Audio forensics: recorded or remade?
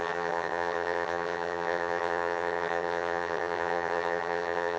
remade